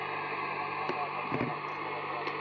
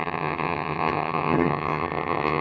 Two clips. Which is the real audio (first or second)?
first